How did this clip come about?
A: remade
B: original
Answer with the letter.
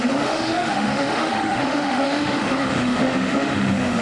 A